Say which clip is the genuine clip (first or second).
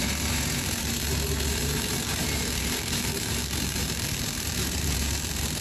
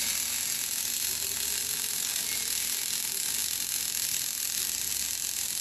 second